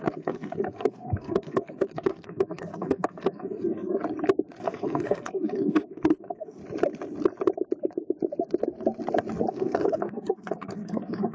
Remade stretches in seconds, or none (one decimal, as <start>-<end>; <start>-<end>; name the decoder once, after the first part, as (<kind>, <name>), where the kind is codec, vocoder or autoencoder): 0.0-4.0 (codec, SNAC); 4.6-6.6; 9.5-11.3